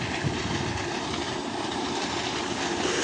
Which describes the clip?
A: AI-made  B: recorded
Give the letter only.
B